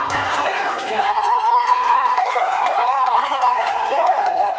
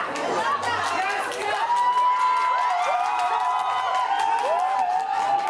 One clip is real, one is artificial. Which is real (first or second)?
second